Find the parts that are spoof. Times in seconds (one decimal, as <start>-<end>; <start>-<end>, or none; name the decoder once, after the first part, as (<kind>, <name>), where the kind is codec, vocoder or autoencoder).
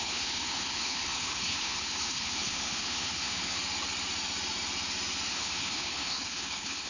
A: 0.0-3.6 (codec, HILCodec); 5.3-6.9